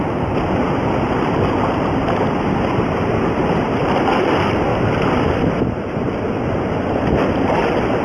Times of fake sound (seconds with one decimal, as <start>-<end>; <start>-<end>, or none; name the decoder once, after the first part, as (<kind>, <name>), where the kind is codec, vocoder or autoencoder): none